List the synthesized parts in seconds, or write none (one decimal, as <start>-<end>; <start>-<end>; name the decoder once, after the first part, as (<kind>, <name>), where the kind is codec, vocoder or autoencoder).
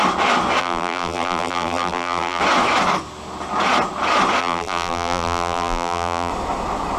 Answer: 0.6-2.4 (vocoder, BigVGAN v2); 4.4-6.3